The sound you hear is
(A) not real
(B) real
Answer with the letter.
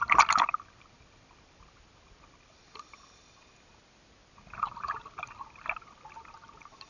B